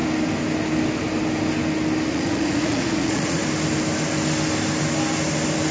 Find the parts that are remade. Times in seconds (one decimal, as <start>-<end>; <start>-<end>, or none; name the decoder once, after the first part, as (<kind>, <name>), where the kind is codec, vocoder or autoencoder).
2.1-3.4 (vocoder, Vocos)